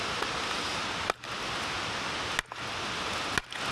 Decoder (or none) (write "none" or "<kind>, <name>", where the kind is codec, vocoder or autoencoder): none